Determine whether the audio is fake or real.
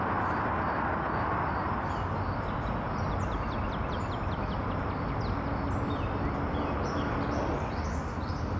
real